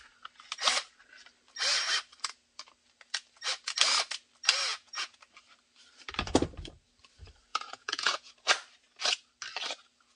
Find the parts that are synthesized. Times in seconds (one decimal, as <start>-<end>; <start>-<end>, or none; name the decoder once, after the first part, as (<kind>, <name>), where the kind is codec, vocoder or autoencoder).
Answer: 4.7-5.2 (vocoder, Vocos); 7.5-8.3